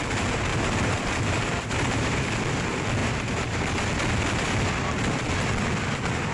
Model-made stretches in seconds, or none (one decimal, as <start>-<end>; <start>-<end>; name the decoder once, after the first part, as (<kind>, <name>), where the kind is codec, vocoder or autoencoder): 0.5-2.3 (vocoder, BigVGAN v2); 3.0-3.6